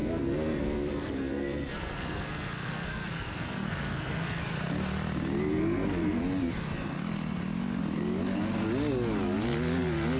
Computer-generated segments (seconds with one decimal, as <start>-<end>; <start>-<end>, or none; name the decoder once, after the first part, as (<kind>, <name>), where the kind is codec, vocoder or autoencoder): 0.0-4.4 (codec, SNAC); 5.5-6.2